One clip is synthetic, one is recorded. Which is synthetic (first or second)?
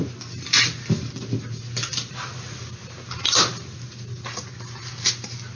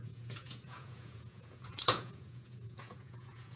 second